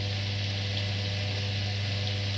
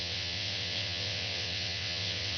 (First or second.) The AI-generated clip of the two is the second